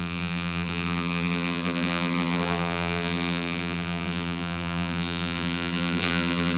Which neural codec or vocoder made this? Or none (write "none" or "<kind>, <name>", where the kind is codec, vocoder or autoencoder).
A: vocoder, BigVGAN v2